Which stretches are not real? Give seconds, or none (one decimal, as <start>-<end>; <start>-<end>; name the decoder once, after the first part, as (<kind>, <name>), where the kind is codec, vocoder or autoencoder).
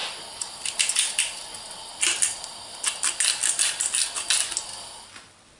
none